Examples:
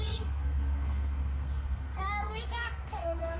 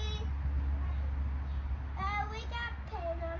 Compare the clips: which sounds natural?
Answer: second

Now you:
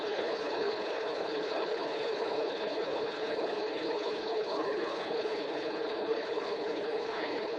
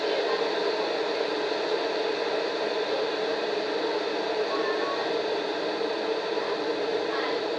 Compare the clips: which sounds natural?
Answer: second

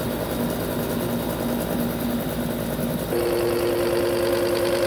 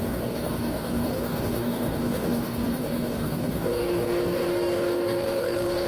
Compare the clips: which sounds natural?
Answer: first